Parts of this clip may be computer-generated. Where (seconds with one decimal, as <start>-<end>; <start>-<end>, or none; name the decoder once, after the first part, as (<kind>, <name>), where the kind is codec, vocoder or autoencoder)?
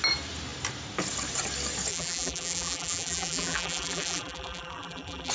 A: 1.9-5.3 (vocoder, BigVGAN v2)